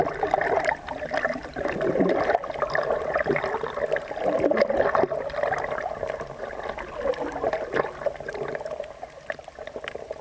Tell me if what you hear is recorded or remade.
recorded